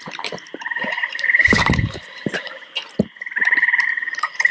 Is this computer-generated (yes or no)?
yes